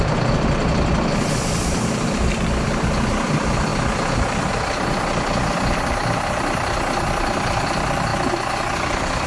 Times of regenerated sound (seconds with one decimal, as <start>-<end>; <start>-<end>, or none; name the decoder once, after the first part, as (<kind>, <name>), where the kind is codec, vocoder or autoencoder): 0.0-3.7 (vocoder, BigVGAN v2); 4.5-8.1; 8.8-9.3